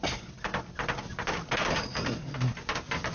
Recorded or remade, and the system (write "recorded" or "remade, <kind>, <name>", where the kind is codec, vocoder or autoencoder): recorded